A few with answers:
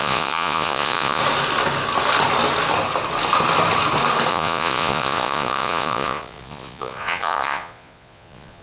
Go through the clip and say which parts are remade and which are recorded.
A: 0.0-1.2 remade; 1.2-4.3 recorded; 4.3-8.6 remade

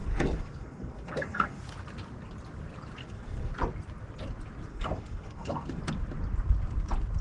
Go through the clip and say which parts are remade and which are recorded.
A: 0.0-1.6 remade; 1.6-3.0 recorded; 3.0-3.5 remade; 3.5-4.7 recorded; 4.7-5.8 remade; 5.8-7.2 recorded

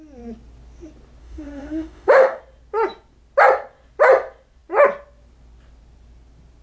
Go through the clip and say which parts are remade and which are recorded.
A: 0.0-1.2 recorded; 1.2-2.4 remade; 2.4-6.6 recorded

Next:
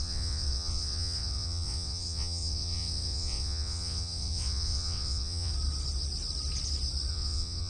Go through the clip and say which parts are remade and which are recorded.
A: 0.0-5.5 remade; 5.5-7.1 recorded; 7.1-7.7 remade

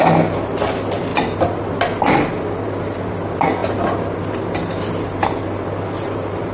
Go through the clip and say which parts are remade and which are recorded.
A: 0.0-6.5 recorded

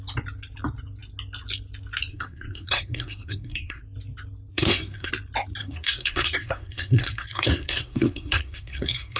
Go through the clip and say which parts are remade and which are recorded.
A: 0.0-2.1 recorded; 2.1-3.8 remade; 3.8-4.5 recorded; 4.5-5.1 remade; 5.1-5.6 recorded; 5.6-9.2 remade

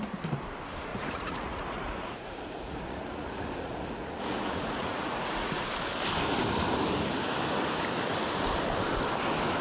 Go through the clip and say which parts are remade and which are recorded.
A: 0.0-0.9 recorded; 0.9-5.7 remade; 5.7-9.6 recorded